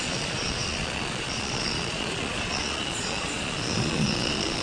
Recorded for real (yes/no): no